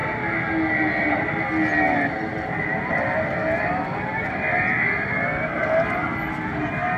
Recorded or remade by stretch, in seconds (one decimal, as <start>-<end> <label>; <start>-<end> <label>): 0.0-7.0 recorded